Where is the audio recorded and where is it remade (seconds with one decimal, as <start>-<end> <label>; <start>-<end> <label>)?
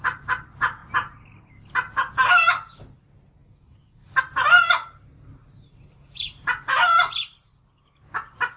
0.0-3.4 recorded; 3.4-4.2 remade; 4.2-8.6 recorded